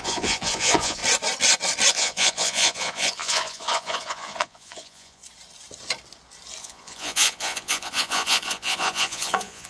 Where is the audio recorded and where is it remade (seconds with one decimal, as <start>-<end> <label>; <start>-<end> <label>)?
0.0-1.0 remade; 1.0-1.9 recorded; 1.9-5.2 remade; 5.2-6.6 recorded; 6.6-9.7 remade